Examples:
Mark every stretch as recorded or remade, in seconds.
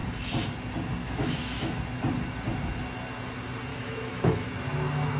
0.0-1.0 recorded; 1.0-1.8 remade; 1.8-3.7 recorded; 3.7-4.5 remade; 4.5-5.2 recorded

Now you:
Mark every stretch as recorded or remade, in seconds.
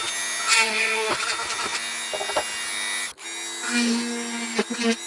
0.0-0.5 recorded; 0.5-1.1 remade; 1.1-5.1 recorded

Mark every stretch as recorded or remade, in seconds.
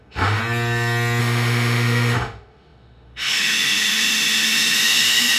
0.0-0.4 remade; 0.4-1.2 recorded; 1.2-5.4 remade